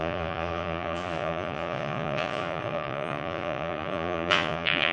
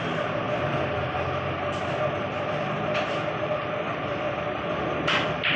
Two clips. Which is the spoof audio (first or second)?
first